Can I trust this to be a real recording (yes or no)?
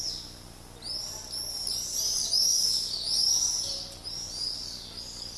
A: yes